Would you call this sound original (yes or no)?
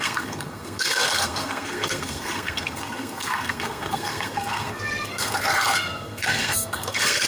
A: no